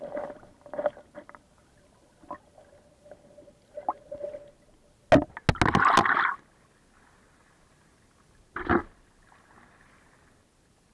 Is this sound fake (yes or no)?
no